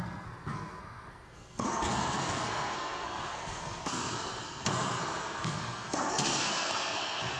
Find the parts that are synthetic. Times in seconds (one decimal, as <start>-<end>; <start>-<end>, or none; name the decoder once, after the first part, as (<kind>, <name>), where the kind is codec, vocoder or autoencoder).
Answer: 0.0-7.4 (codec, SNAC)